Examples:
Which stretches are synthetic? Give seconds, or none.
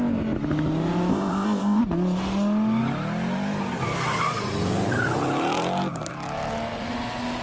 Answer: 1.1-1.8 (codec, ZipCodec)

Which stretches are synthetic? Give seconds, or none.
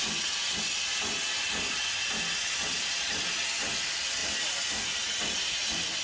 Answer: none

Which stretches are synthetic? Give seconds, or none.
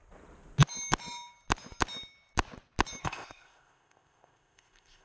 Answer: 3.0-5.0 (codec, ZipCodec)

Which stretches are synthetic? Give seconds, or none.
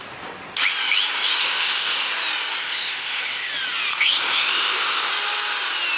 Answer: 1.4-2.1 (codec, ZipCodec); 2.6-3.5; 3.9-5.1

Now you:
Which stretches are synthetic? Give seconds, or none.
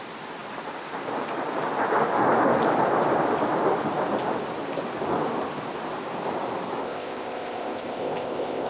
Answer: 6.8-8.7 (codec, ZipCodec)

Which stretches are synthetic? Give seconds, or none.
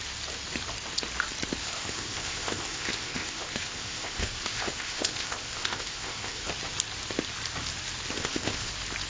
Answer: 1.6-6.5 (codec, ZipCodec); 8.2-8.7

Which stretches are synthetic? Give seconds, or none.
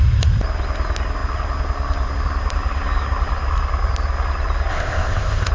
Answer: 4.7-5.5 (codec, ZipCodec)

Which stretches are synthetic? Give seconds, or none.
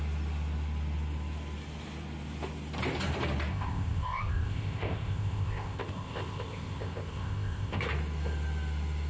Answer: 3.5-7.8 (codec, ZipCodec)